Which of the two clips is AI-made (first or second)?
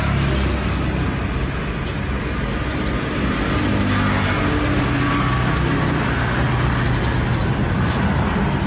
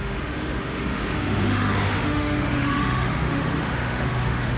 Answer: second